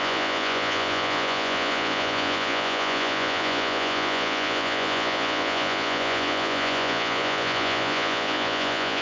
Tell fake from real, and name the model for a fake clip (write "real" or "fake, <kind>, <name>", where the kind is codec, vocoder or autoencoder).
fake, vocoder, Vocos